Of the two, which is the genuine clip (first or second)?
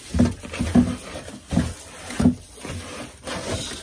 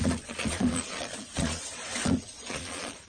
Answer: first